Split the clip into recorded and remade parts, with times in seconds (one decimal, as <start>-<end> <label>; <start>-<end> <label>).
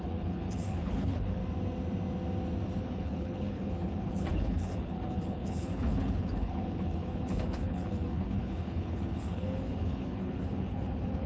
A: 0.0-1.4 remade; 1.4-2.8 recorded; 2.8-11.3 remade